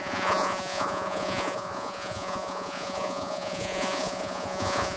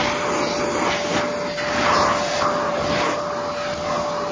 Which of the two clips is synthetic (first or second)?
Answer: first